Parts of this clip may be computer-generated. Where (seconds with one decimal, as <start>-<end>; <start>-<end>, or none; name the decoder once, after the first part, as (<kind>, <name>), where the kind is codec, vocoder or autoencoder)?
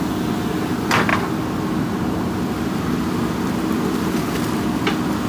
none